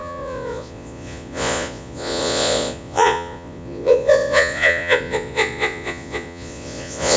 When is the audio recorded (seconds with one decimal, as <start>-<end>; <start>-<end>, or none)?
none